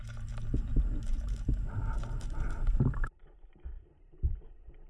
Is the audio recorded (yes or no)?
no